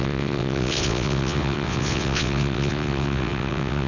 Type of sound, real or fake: fake